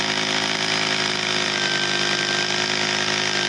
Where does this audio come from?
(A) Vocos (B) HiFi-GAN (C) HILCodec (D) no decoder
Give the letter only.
D